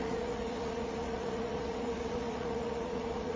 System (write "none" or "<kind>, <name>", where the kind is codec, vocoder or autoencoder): vocoder, Vocos